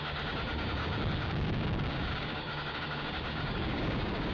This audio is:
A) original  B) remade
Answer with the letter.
B